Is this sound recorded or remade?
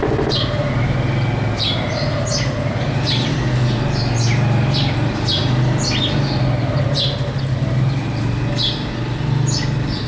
recorded